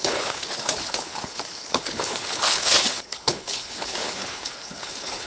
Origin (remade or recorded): remade